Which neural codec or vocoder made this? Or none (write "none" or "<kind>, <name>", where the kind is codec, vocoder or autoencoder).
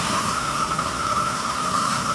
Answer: codec, SNAC